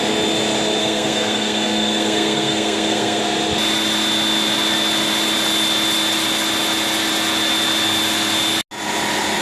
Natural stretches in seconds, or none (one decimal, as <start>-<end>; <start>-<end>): 0.0-0.8; 3.2-9.4